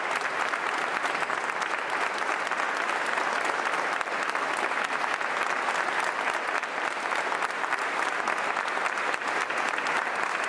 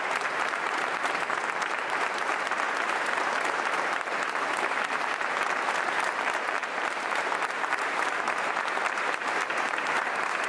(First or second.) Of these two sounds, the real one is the first